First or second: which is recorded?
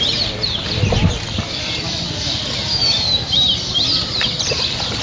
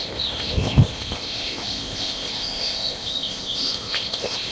first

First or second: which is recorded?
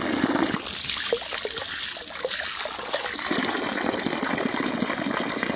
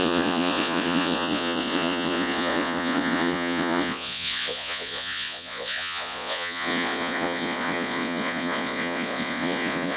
first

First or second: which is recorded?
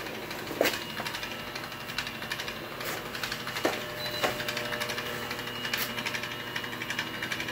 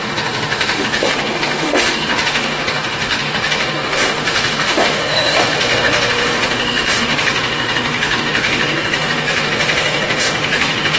first